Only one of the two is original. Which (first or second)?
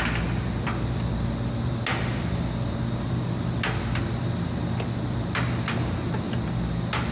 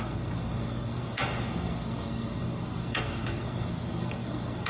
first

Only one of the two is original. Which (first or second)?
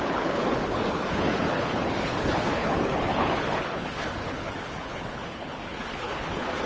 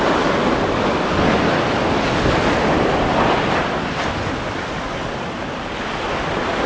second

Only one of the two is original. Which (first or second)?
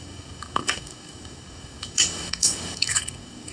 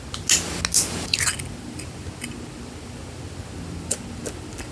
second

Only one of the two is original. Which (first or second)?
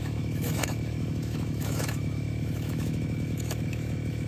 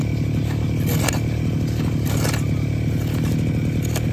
second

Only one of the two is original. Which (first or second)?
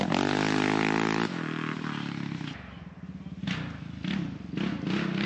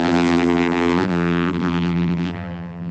first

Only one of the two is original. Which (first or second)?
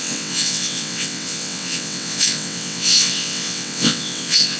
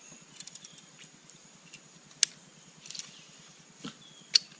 second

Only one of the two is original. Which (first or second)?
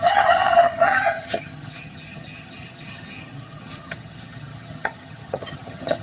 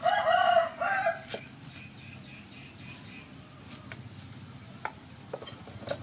second